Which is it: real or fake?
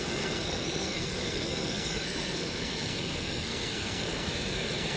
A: fake